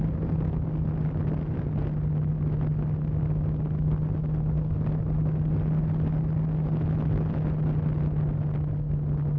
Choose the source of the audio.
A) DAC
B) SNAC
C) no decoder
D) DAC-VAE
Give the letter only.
C